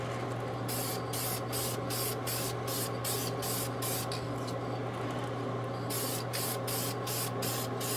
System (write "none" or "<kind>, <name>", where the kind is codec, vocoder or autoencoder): none